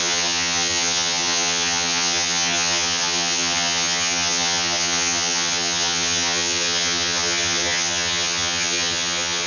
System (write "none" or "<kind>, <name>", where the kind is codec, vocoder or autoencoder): vocoder, HiFi-GAN